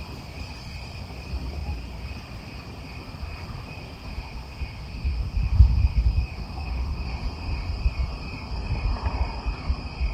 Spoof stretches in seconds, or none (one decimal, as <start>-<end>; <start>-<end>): 4.1-7.8